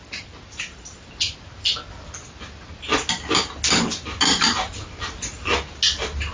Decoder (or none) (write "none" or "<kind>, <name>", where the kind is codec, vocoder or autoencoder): none